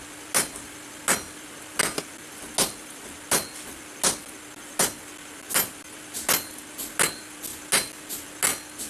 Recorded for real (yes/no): yes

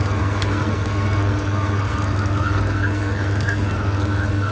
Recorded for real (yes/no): no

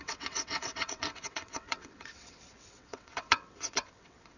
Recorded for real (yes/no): no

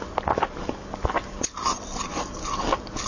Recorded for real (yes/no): yes